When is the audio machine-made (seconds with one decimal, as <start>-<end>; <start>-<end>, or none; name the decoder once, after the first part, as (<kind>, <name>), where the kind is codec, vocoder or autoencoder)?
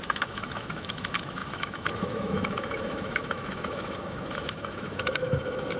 0.0-5.8 (autoencoder, DAC-VAE)